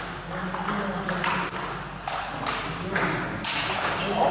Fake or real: real